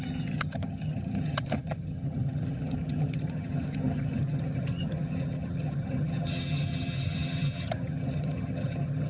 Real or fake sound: fake